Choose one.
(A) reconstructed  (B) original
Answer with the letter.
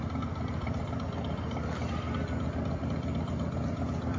B